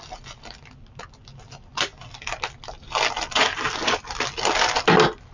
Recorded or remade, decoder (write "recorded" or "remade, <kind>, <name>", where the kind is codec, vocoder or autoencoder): recorded